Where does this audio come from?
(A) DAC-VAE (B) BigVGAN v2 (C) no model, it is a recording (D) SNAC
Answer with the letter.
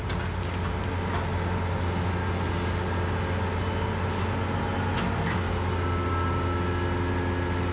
C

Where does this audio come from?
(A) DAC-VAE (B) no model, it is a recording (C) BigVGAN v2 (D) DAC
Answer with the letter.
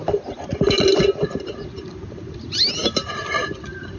B